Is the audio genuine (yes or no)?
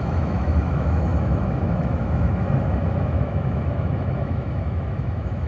no